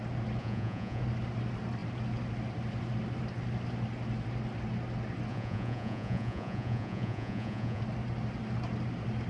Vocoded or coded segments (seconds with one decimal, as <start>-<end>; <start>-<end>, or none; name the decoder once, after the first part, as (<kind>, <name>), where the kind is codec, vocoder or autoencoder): 0.4-1.0 (vocoder, Vocos); 5.3-7.8